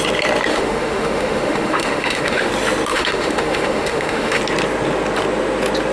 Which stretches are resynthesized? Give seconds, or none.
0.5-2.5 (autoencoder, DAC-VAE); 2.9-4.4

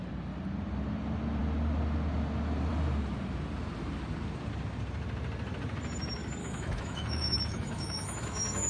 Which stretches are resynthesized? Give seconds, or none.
6.4-8.7 (autoencoder, DAC-VAE)

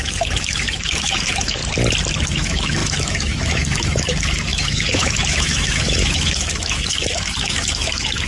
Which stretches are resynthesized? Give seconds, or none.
0.0-1.6 (autoencoder, DAC-VAE); 2.2-8.3

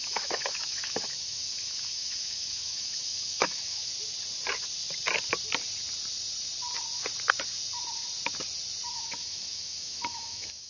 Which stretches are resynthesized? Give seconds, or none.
0.0-3.8 (autoencoder, DAC-VAE); 8.9-10.7